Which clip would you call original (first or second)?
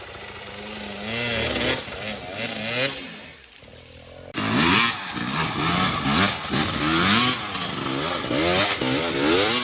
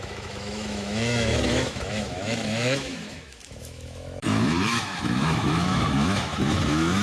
first